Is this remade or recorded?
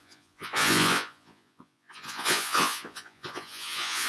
remade